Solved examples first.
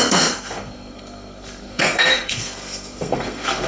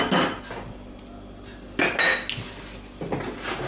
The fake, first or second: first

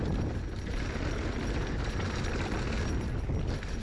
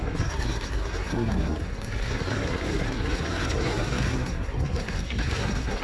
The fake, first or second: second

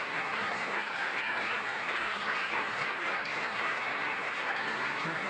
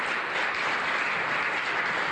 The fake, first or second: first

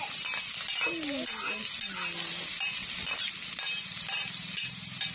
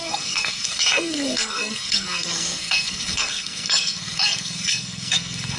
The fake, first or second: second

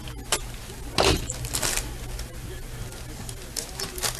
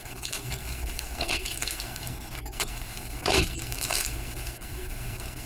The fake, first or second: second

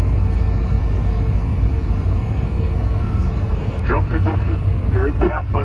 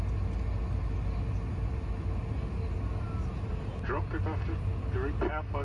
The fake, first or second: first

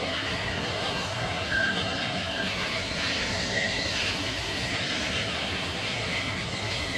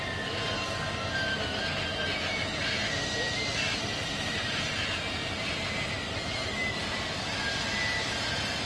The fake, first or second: first